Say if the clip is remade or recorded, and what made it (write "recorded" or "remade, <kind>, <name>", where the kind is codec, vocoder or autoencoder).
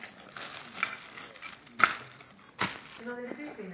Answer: recorded